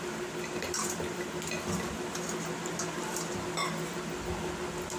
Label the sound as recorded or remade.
recorded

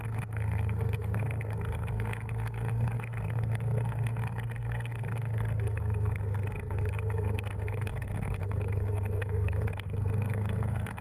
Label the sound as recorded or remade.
remade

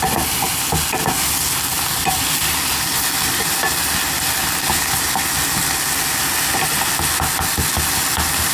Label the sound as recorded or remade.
recorded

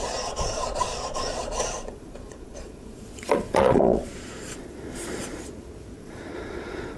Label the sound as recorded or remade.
remade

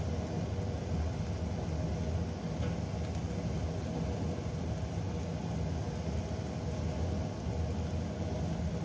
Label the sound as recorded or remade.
recorded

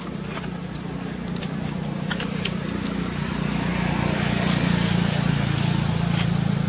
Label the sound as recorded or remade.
remade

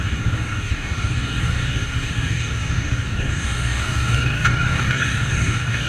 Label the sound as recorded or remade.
remade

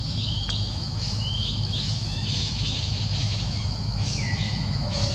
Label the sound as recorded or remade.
remade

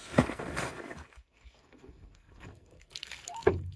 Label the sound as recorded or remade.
remade